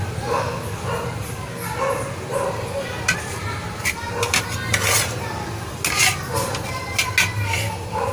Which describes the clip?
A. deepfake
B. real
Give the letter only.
B